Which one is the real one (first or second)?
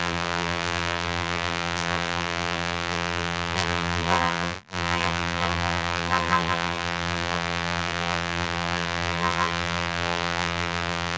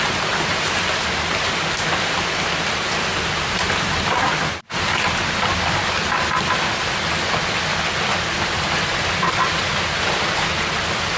second